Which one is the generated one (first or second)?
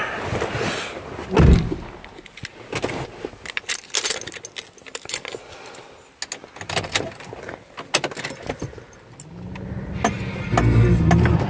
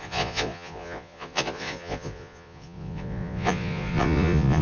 second